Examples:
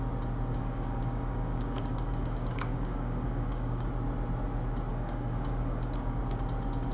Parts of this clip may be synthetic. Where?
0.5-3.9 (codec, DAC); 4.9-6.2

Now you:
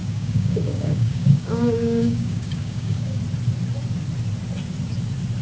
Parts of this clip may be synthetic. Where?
0.0-3.2 (codec, DAC)

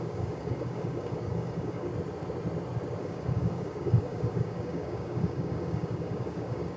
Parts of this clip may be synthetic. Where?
0.0-1.9 (codec, DAC); 3.0-6.8